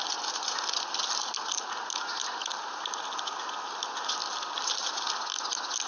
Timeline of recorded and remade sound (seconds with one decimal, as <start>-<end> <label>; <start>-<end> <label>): 0.0-5.9 recorded